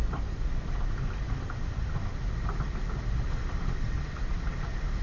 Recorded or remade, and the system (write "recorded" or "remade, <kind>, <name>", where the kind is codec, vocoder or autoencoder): recorded